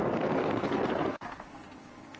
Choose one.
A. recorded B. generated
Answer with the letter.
B